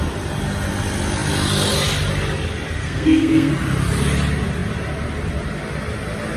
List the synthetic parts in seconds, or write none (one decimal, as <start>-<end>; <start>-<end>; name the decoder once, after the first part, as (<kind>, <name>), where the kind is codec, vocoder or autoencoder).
2.8-3.5 (codec, SNAC)